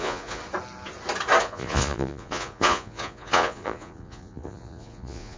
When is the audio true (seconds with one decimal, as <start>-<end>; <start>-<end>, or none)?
0.4-1.4

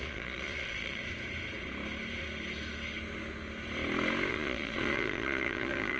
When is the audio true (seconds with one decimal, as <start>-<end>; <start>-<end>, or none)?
1.0-4.3

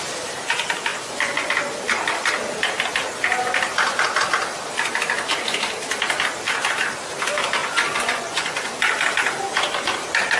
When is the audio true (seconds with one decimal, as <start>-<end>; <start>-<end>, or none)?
0.0-0.9; 1.5-7.6; 8.7-10.4

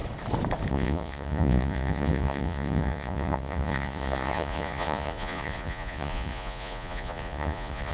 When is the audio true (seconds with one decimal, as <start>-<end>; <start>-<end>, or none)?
0.0-0.7

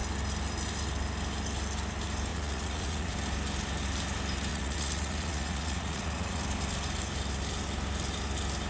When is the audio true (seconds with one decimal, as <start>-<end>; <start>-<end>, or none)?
0.0-2.3; 3.1-4.5; 6.4-8.7

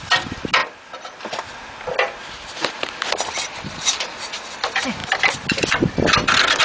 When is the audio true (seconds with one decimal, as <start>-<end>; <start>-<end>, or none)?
0.0-6.6

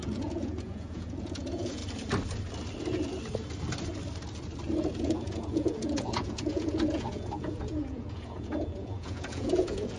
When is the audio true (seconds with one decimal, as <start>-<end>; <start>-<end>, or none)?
1.8-4.9

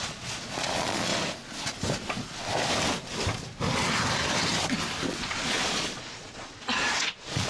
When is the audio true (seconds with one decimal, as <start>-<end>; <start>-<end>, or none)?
1.1-5.1